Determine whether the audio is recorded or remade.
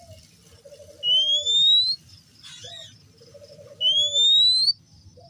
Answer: recorded